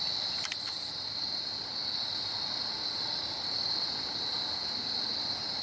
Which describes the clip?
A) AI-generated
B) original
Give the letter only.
B